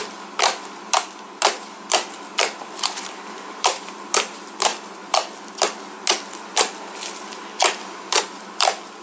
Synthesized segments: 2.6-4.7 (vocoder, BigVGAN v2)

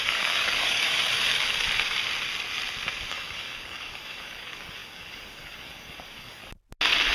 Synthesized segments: 0.0-1.0 (codec, DAC); 3.1-6.4

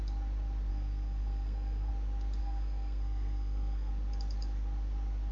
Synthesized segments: 0.7-1.9 (codec, SNAC); 2.4-3.9

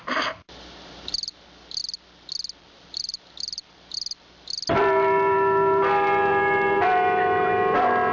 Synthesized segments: 0.0-1.8 (vocoder, BigVGAN v2); 2.5-8.1

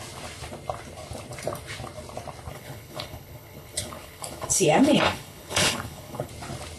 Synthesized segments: 2.5-6.3 (codec, HILCodec)

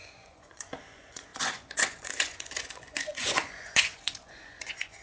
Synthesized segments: 0.0-5.0 (vocoder, Vocos)

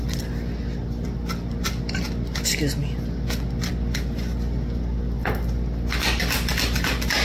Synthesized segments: none